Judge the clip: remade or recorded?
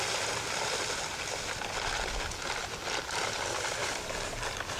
recorded